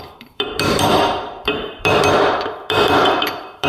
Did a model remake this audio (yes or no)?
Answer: yes